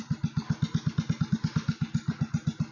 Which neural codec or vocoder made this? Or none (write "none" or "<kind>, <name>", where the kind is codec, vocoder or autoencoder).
none